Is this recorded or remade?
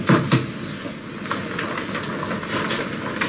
recorded